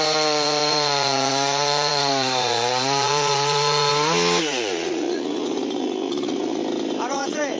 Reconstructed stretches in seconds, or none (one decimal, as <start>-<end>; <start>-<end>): 0.0-3.9; 4.4-6.6; 7.1-7.6